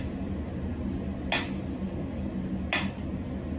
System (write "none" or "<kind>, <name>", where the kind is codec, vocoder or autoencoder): none